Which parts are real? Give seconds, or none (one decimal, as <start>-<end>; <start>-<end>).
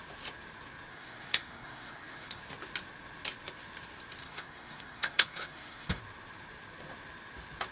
0.0-0.9; 2.4-4.2; 6.0-7.7